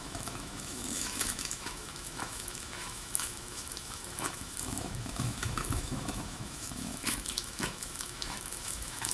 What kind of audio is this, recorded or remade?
remade